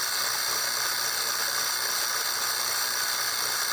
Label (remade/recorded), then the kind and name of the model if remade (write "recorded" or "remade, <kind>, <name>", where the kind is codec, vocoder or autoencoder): recorded